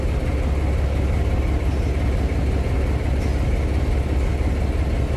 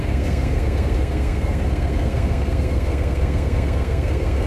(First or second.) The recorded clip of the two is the first